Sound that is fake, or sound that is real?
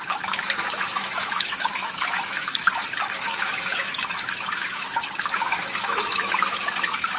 fake